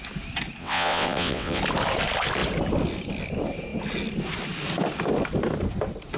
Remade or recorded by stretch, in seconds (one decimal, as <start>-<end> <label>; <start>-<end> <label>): 0.0-0.6 recorded; 0.6-1.6 remade; 1.6-6.2 recorded